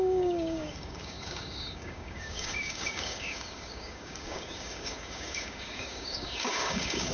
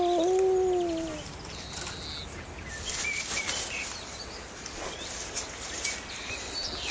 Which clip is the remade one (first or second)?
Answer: first